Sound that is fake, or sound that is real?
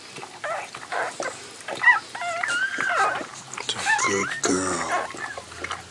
real